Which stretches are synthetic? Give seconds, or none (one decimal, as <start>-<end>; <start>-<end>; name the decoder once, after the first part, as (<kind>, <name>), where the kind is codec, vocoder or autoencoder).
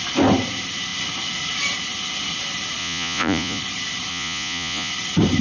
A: 2.8-3.6 (vocoder, Vocos); 4.1-4.9